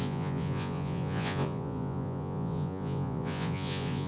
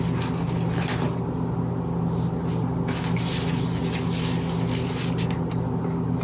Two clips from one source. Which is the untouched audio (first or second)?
second